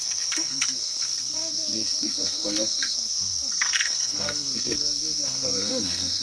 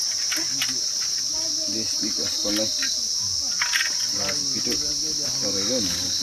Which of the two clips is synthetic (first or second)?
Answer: first